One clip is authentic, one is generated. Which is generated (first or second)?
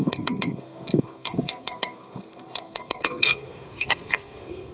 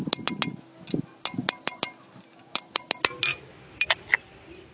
first